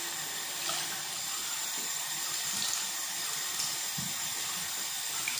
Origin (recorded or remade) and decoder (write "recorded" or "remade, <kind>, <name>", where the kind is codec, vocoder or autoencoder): recorded